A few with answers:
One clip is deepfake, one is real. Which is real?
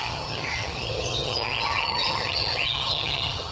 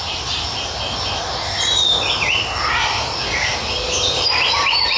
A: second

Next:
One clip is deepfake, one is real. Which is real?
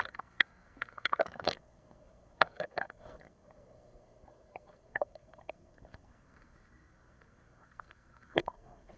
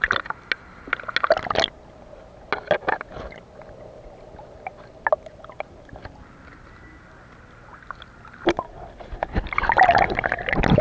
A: second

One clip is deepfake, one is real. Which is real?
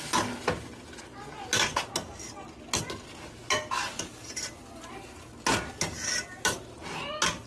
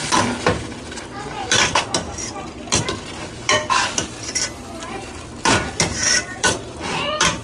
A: first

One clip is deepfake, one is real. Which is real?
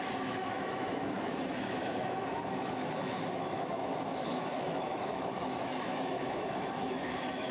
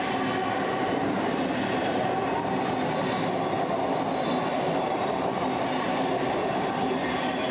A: second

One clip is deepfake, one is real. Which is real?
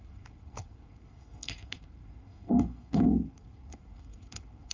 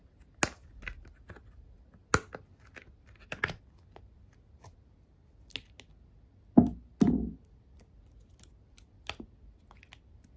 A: second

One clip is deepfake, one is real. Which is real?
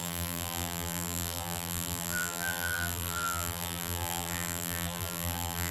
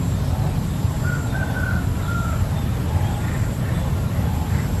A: second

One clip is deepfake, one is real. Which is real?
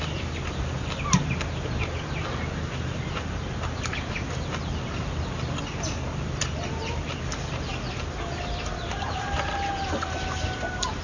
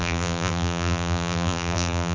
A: first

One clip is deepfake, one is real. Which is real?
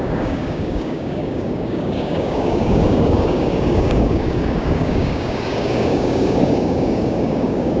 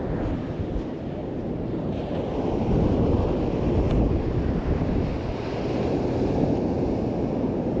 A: second